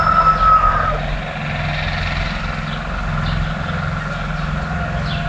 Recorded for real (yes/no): yes